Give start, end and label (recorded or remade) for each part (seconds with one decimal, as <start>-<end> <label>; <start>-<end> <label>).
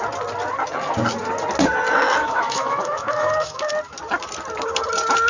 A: 0.0-2.2 recorded; 2.2-3.7 remade; 3.7-5.3 recorded